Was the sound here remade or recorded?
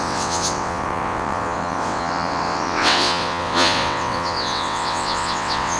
remade